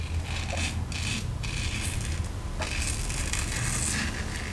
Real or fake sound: real